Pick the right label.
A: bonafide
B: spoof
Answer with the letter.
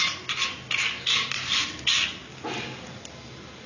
A